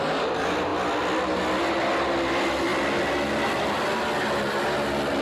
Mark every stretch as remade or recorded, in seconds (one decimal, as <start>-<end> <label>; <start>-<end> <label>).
0.0-5.2 recorded